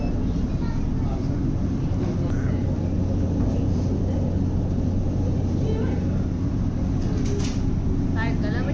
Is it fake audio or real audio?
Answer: real